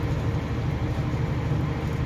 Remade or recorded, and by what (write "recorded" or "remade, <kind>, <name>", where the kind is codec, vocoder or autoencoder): recorded